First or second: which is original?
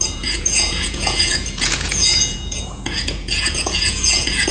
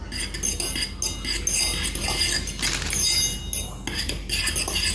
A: second